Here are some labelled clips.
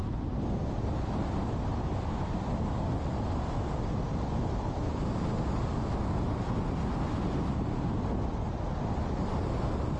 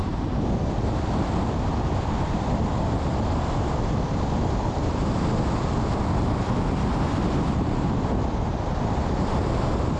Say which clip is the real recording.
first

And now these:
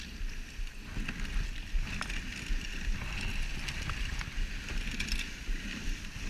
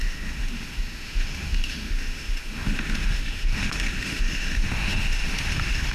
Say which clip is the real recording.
first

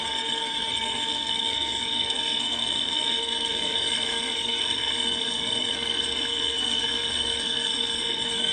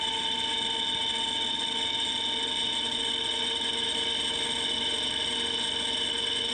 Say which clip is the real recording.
second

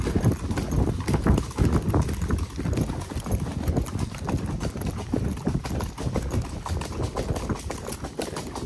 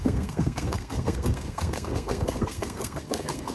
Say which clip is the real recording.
first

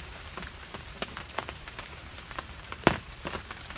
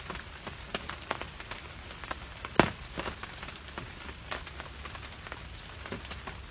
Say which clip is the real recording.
second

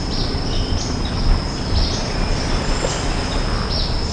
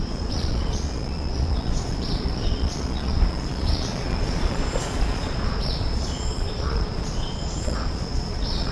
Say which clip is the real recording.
first